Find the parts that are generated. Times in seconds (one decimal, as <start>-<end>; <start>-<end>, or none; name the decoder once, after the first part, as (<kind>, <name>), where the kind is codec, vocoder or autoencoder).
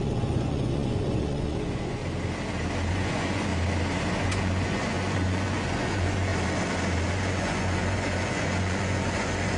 0.0-2.0 (vocoder, Vocos); 2.9-3.5; 4.2-6.3; 7.1-9.6